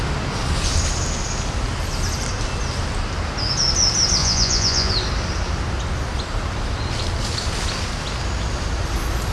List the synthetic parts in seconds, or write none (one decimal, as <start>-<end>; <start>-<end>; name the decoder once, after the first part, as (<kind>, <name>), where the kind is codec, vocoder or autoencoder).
4.2-4.9 (vocoder, Vocos)

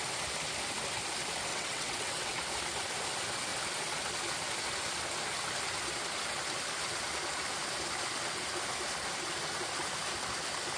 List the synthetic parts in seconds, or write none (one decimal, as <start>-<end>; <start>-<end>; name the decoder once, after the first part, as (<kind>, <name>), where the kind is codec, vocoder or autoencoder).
1.5-2.4 (vocoder, WaveNeXt)

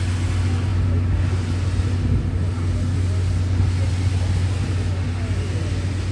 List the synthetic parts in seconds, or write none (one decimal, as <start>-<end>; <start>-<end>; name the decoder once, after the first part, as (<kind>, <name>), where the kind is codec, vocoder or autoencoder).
none